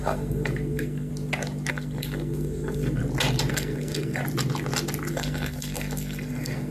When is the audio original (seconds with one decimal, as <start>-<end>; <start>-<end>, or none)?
1.1-1.7; 3.0-3.5; 4.2-5.1